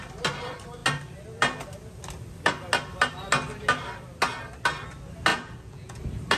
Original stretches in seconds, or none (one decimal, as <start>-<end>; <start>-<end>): 0.0-5.3; 6.0-6.4